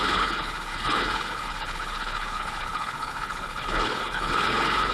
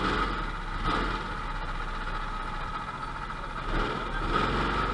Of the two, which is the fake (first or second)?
first